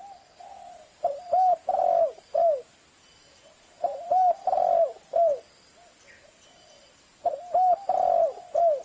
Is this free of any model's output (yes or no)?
yes